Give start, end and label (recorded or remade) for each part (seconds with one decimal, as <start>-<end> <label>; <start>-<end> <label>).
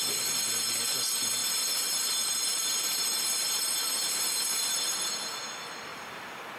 0.0-1.4 recorded; 1.4-5.4 remade; 5.4-5.9 recorded; 5.9-6.6 remade